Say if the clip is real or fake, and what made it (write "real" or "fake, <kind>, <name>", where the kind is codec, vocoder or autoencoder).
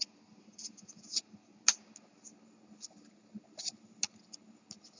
real